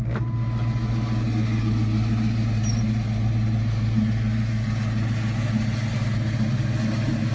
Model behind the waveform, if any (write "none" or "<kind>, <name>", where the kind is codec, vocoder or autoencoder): none